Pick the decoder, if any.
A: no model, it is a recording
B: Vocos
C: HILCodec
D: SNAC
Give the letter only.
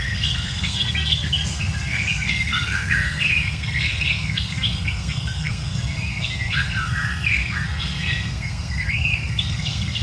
D